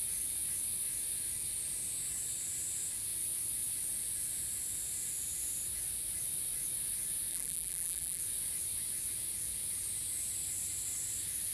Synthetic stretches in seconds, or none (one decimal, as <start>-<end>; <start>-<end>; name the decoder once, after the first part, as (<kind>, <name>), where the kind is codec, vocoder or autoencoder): 7.3-8.2 (vocoder, BigVGAN v2)